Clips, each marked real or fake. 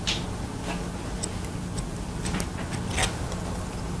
real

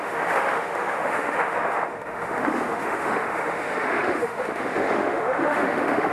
fake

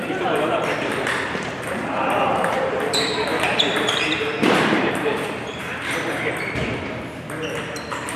fake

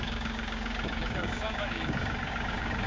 fake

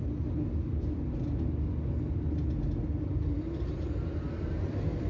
real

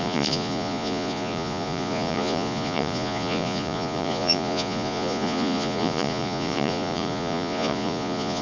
fake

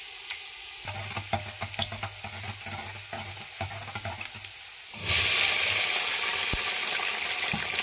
real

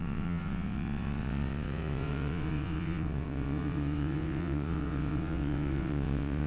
fake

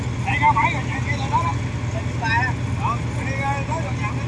real